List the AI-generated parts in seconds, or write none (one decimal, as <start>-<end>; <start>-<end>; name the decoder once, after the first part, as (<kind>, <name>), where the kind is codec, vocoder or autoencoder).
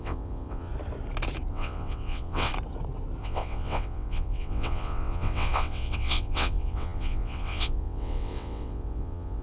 0.0-0.7 (vocoder, WaveNeXt); 1.5-2.5; 3.2-9.4